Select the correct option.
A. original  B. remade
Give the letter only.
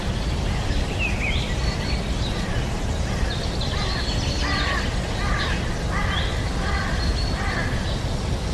A